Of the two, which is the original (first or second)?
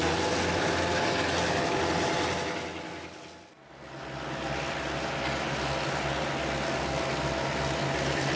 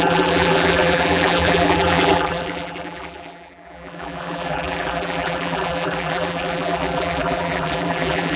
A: first